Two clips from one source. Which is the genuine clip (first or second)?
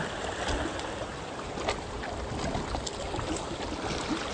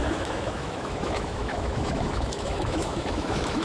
first